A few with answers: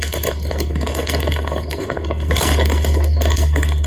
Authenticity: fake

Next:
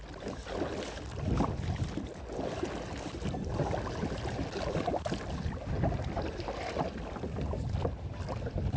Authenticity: real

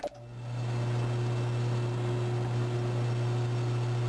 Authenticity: real